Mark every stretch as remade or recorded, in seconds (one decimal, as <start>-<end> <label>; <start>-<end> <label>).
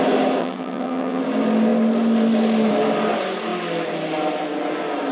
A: 0.0-0.4 recorded; 0.4-1.2 remade; 1.2-5.1 recorded